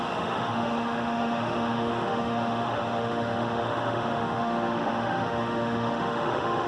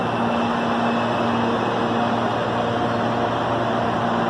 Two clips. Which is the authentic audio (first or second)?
second